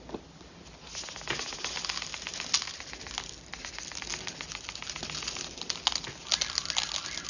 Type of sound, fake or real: real